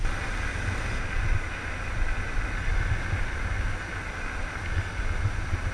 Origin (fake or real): real